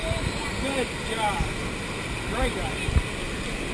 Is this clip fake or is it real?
real